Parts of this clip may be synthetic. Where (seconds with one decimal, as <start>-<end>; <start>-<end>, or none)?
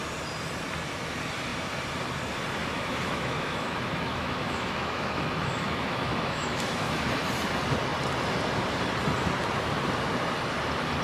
2.6-7.1